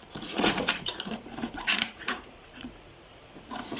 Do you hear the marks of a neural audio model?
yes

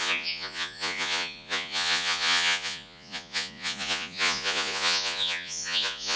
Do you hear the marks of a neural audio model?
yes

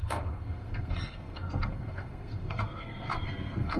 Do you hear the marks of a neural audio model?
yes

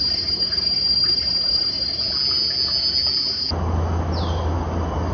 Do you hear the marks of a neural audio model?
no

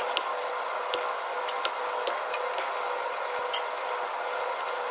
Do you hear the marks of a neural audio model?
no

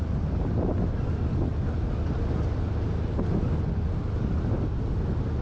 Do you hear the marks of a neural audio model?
no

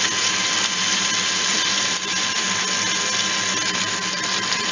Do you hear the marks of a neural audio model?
no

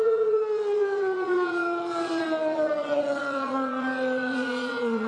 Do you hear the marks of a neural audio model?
yes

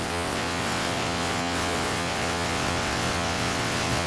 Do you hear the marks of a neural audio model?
yes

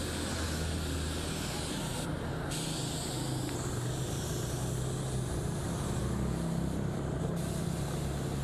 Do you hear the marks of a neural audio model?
no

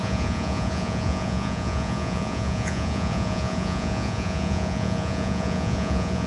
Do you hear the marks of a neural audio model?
yes